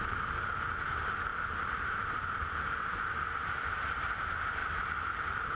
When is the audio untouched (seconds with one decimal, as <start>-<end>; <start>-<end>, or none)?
0.0-1.3; 2.5-3.4; 4.1-4.6